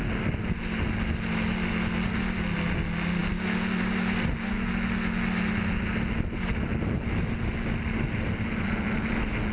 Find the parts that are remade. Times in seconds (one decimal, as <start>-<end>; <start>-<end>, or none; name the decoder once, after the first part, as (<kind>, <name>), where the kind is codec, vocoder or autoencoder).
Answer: none